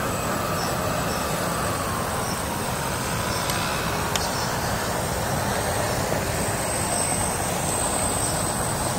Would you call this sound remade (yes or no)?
no